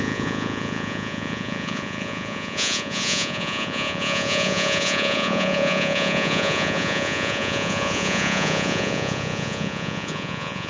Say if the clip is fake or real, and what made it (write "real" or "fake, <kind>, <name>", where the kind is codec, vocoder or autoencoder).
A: fake, vocoder, Vocos